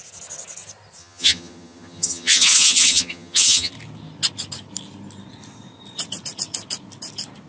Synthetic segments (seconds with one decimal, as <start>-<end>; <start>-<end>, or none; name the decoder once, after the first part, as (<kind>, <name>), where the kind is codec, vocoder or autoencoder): 1.0-3.7 (vocoder, HiFi-GAN)